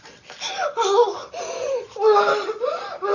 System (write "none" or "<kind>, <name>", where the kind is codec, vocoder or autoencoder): none